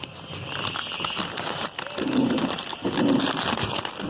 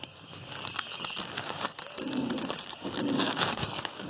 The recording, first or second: first